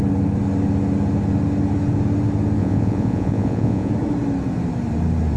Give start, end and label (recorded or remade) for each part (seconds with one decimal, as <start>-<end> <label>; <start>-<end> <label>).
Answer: 0.0-2.6 recorded; 2.6-3.9 remade; 3.9-5.4 recorded